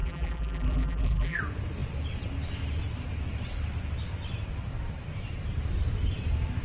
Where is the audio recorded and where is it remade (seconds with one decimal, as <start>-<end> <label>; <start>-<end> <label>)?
0.0-1.4 remade; 1.4-6.6 recorded